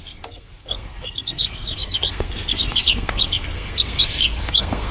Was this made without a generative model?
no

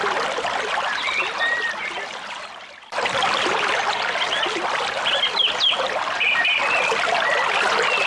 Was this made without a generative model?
no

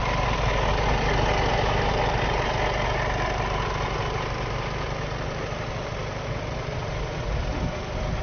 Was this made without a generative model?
yes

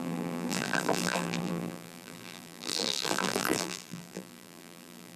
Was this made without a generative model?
no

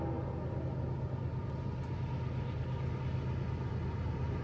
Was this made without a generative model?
yes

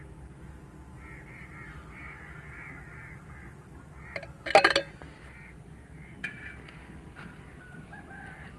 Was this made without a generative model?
yes